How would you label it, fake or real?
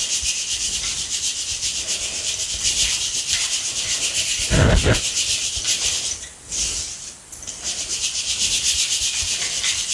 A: real